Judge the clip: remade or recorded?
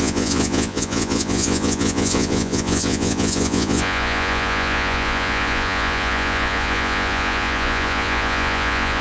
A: remade